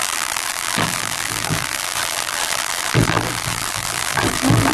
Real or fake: fake